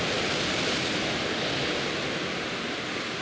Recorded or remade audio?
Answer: recorded